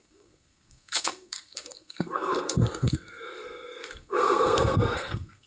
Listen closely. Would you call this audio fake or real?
fake